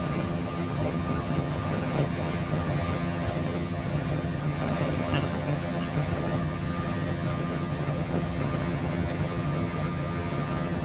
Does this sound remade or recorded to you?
remade